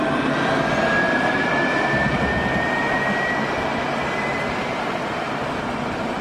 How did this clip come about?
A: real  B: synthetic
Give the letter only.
A